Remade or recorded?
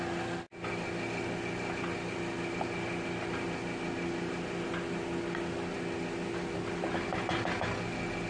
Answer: recorded